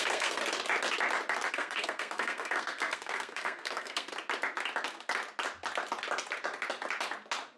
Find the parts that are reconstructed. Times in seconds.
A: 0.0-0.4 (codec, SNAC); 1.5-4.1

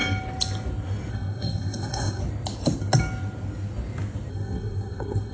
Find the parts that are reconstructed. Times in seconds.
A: 1.1-2.2 (codec, SNAC); 4.3-5.3

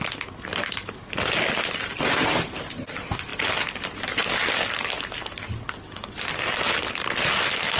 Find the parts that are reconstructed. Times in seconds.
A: none

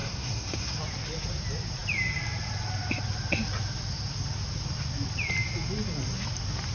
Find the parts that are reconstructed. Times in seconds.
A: 0.0-0.8 (codec, SNAC)

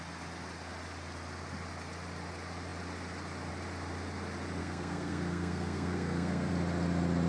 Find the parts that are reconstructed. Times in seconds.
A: 4.6-6.5 (codec, SNAC)

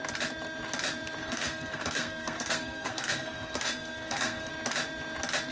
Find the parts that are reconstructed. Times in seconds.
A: 1.2-4.5 (codec, SNAC)

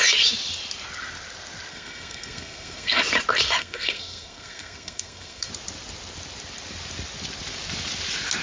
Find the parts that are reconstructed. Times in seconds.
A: 1.7-3.0 (codec, SNAC); 3.6-5.5

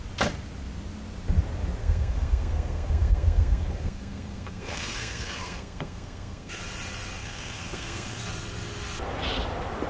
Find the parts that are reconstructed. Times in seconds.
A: 1.8-6.6 (codec, SNAC); 7.2-8.2